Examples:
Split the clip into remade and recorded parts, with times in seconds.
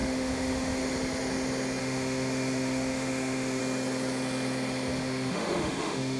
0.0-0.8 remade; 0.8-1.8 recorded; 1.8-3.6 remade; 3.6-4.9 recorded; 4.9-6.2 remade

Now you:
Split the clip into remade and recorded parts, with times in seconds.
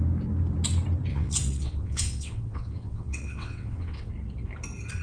0.0-1.1 recorded; 1.1-4.1 remade; 4.1-5.0 recorded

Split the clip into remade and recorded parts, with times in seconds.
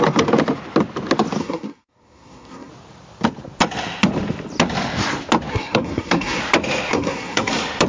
0.0-1.4 recorded; 1.4-2.7 remade; 2.7-5.5 recorded; 5.5-6.4 remade; 6.4-6.9 recorded; 6.9-7.5 remade; 7.5-7.9 recorded